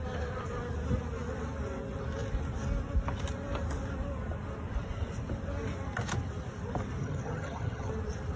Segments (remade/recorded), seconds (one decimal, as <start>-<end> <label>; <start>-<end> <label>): 0.0-7.0 recorded; 7.0-7.9 remade; 7.9-8.4 recorded